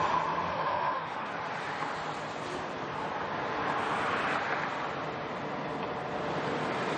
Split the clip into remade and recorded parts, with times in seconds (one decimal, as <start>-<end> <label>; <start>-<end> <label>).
0.0-0.5 recorded; 0.5-1.3 remade; 1.3-7.0 recorded